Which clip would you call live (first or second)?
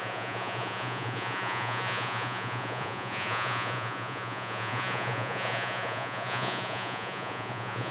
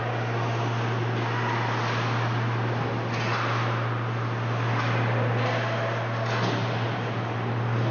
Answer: second